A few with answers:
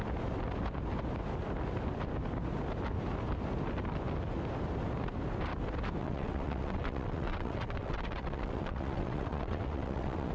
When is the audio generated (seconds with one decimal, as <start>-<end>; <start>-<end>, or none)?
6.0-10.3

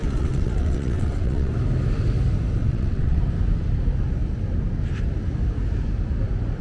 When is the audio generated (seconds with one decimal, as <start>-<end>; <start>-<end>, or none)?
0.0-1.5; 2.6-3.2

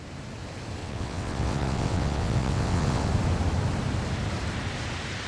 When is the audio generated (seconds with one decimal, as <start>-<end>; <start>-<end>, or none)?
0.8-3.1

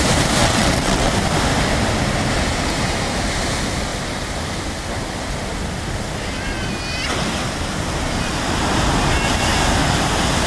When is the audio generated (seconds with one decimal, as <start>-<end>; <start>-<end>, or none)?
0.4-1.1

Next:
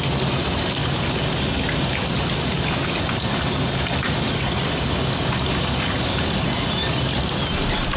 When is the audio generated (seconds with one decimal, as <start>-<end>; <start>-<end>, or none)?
none

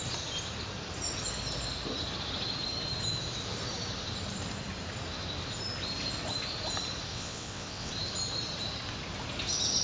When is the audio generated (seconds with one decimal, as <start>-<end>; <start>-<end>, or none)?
7.1-7.9